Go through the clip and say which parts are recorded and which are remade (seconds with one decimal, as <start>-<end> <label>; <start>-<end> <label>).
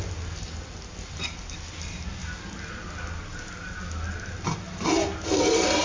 0.0-5.8 recorded